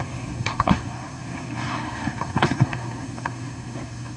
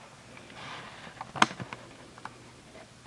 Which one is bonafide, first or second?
second